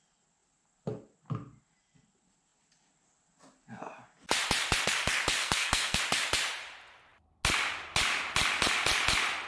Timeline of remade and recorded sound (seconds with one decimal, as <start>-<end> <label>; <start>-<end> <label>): 0.0-5.4 recorded; 5.4-6.0 remade; 6.0-9.5 recorded